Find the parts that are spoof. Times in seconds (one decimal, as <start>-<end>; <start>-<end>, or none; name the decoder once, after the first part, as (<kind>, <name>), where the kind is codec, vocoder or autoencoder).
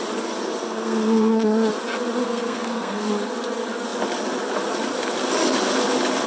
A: 0.6-1.3 (codec, SNAC); 2.2-3.1